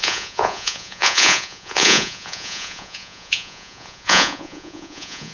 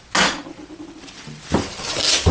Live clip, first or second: second